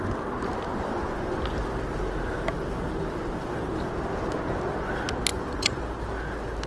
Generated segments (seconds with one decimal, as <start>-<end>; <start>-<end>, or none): 0.7-1.4; 5.3-5.8